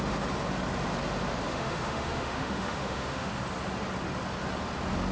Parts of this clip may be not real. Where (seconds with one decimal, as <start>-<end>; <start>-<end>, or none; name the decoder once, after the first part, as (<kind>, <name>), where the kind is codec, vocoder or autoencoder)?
1.5-3.3 (autoencoder, DAC-VAE)